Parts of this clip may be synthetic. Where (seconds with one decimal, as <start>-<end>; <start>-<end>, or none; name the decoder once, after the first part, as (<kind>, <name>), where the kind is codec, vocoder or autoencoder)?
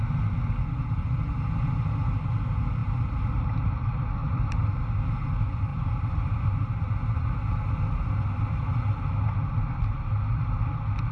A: 2.8-3.7 (vocoder, BigVGAN v2); 4.2-4.8; 5.7-7.3